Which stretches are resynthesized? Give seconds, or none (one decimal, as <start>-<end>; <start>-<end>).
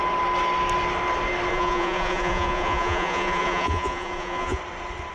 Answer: 1.5-4.6